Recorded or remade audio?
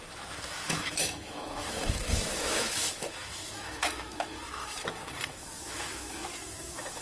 remade